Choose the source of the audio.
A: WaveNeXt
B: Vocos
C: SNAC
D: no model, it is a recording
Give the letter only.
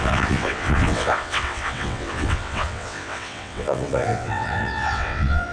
A